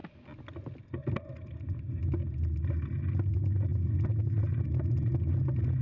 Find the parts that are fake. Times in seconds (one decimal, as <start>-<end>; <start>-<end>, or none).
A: none